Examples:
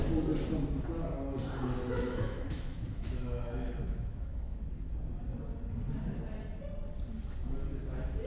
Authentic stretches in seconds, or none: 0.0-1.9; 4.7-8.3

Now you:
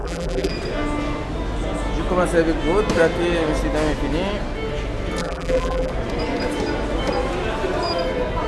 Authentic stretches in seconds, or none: 0.5-5.2; 5.9-8.5

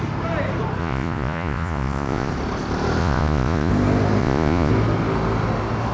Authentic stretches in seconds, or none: 0.0-0.8; 2.3-3.0; 3.7-4.2; 4.7-5.9

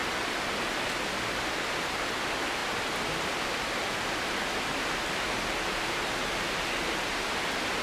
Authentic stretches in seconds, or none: 0.0-7.8

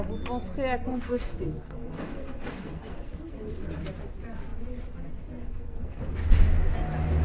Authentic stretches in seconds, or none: 0.0-0.9; 3.8-5.4; 6.0-7.2

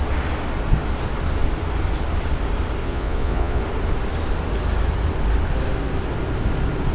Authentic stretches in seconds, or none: 0.0-2.8; 3.6-6.9

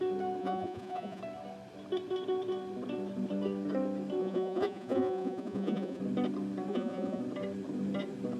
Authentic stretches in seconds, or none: 0.0-0.4; 1.2-4.2; 6.0-6.7; 7.2-8.4

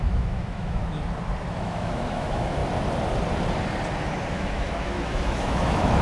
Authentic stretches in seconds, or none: 0.8-1.5; 2.6-4.3